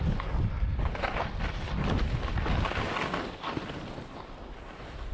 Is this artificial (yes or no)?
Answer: no